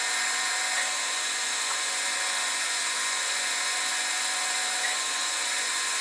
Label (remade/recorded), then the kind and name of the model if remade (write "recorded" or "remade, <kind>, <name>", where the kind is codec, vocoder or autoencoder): remade, vocoder, Vocos